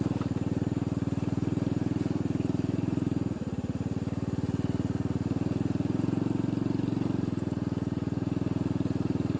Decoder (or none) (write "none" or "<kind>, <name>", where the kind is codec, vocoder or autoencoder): none